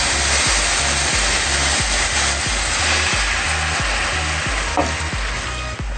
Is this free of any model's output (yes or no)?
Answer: yes